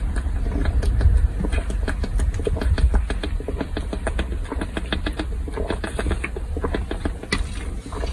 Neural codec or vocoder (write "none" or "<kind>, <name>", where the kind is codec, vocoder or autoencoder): none